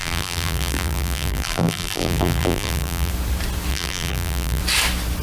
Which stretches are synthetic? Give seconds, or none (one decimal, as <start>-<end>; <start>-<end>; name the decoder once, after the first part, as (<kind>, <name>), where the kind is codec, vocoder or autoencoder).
0.0-3.1 (vocoder, BigVGAN v2); 3.7-4.6